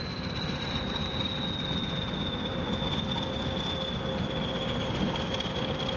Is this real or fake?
real